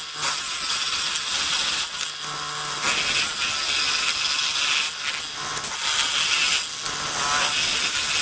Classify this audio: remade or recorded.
recorded